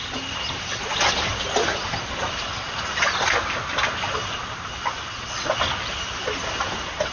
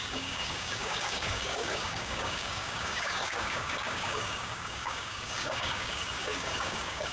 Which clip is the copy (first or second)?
second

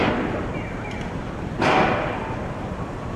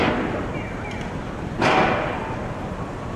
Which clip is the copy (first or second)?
first